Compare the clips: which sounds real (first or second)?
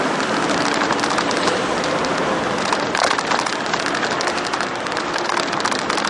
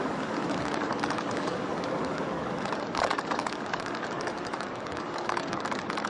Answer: first